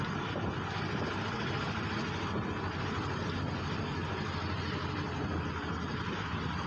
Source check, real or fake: real